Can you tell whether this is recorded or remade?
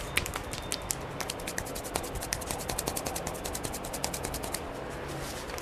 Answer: recorded